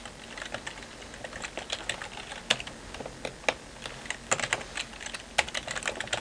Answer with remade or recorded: recorded